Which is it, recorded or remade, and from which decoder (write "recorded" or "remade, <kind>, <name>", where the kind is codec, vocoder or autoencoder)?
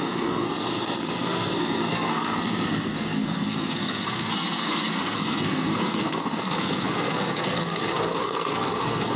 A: remade, codec, SNAC